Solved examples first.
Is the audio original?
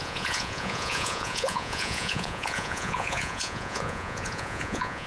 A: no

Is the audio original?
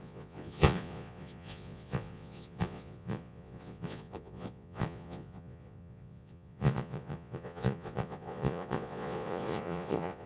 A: no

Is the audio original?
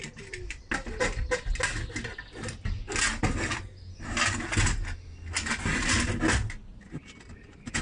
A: yes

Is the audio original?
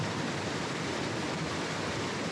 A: yes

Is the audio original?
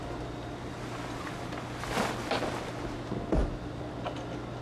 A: yes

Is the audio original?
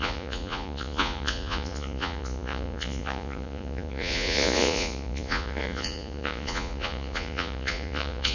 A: no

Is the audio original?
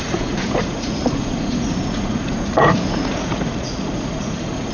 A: no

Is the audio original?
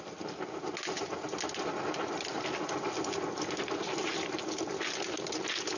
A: yes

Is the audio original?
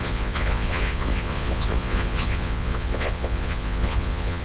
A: no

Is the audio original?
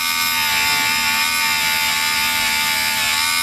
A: yes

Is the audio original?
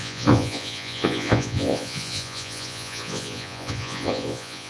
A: no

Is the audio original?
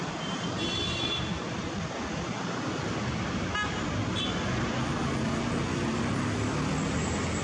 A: yes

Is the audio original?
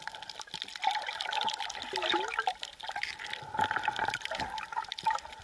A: yes